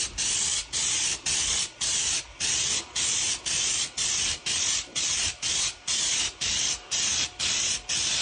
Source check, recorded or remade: remade